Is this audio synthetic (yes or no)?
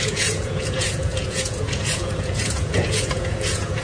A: yes